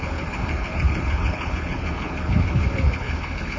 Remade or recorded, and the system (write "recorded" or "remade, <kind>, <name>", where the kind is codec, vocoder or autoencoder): remade, codec, HILCodec